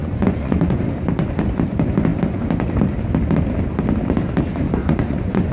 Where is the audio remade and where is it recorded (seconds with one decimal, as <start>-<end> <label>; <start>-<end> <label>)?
0.0-0.9 remade; 0.9-4.8 recorded; 4.8-5.5 remade